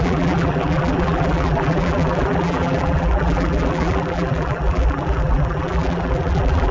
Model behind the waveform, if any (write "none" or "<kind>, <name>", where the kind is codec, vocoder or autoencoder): vocoder, BigVGAN v2